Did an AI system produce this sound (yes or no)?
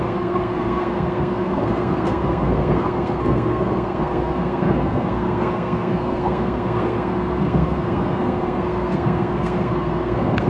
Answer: yes